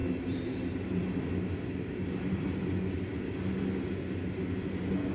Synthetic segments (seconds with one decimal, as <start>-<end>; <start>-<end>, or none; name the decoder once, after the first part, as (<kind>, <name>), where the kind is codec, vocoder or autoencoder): none